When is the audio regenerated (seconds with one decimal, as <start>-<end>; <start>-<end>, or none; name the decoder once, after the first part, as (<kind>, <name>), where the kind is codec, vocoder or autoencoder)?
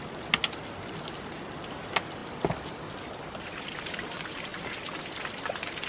none